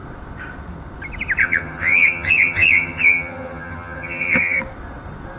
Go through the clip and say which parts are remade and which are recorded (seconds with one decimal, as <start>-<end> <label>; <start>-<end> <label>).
0.0-1.4 recorded; 1.4-4.6 remade; 4.6-5.4 recorded